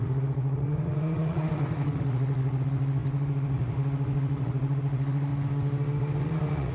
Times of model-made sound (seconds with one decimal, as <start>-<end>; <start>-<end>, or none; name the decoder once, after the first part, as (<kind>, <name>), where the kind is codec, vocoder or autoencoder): 0.0-5.3 (vocoder, Vocos); 6.2-6.7